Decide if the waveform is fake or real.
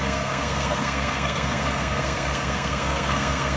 fake